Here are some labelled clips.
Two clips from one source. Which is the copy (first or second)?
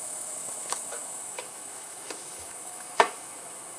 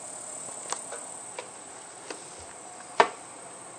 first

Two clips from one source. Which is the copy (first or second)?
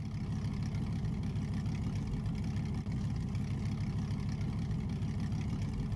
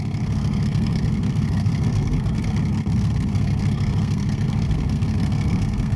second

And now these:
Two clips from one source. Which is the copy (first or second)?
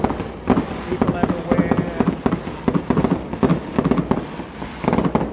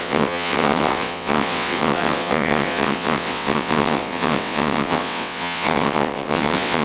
second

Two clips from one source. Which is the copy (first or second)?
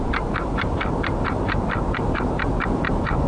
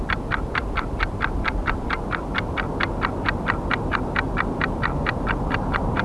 first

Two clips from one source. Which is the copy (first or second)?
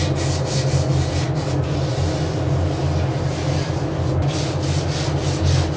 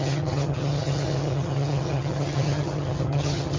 second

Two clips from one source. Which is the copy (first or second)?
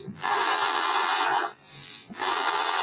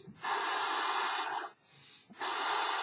first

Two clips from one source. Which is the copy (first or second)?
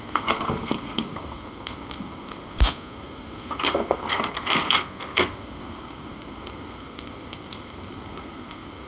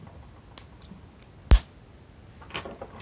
first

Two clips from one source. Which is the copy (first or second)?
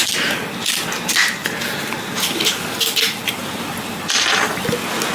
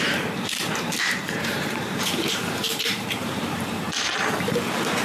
second